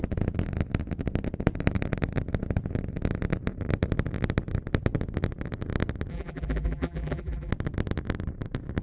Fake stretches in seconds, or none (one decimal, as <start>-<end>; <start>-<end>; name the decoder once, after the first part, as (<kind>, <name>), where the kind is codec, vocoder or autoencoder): 6.1-7.5 (vocoder, BigVGAN v2)